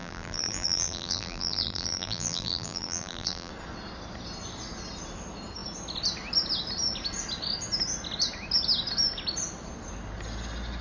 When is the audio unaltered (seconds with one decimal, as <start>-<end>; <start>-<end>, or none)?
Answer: 3.5-10.8